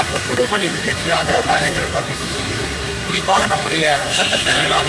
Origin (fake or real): fake